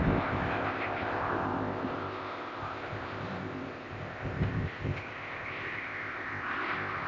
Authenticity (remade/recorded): remade